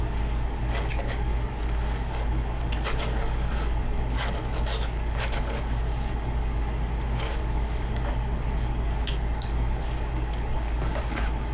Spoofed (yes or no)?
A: yes